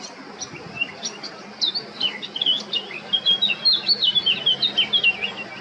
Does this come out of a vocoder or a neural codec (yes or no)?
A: no